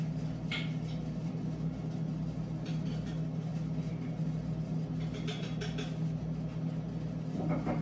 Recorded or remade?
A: recorded